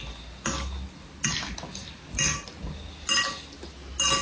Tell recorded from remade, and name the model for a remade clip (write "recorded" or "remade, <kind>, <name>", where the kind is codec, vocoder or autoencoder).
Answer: recorded